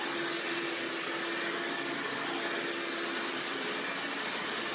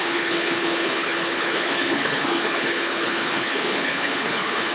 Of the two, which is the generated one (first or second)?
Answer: second